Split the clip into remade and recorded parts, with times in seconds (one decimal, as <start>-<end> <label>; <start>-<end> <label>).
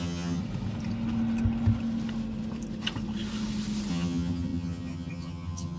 0.0-0.4 remade; 0.4-3.9 recorded; 3.9-5.8 remade